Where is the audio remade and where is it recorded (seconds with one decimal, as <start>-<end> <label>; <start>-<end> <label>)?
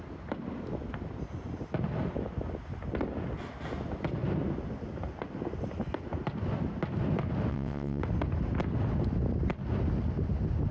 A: 0.0-7.5 recorded; 7.5-8.0 remade; 8.0-10.7 recorded